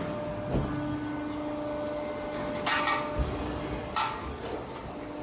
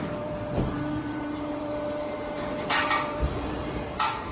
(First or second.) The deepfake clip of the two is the second